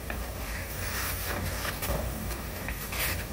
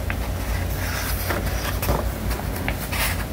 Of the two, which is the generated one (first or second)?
first